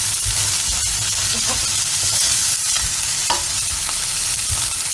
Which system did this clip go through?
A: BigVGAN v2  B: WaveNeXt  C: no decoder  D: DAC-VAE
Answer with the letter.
A